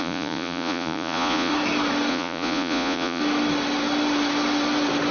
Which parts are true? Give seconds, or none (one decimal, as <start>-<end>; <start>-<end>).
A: 1.5-2.1; 3.2-5.1